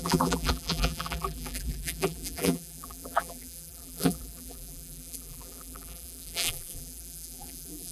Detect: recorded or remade remade